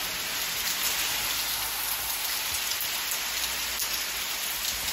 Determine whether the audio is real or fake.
real